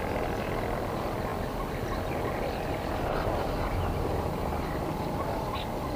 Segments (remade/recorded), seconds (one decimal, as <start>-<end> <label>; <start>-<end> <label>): 0.0-6.0 recorded